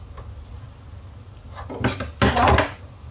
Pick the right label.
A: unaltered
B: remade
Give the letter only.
A